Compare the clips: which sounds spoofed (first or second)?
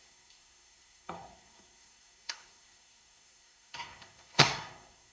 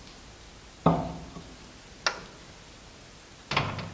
first